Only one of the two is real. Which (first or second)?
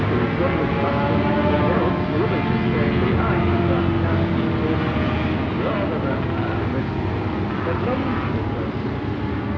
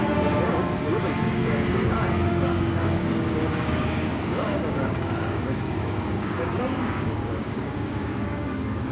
first